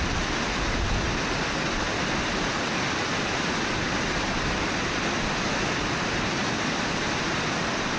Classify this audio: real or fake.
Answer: real